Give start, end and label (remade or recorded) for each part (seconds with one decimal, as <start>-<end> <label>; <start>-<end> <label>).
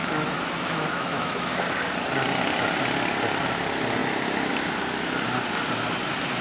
0.0-1.7 remade; 1.7-6.4 recorded